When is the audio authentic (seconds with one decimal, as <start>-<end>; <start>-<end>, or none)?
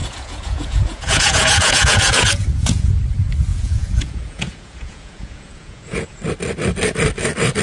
3.0-3.5; 6.2-7.6